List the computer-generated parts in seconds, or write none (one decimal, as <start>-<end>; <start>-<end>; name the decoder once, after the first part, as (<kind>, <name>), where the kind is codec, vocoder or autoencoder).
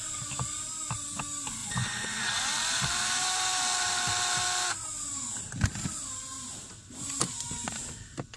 1.6-2.5 (vocoder, Vocos)